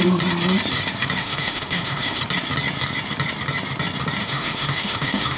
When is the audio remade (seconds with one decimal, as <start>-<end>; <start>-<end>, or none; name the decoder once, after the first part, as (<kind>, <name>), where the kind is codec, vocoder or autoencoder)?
1.2-2.2 (autoencoder, DAC-VAE); 4.2-5.4